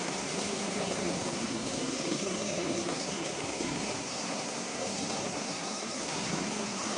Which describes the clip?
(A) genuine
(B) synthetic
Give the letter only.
B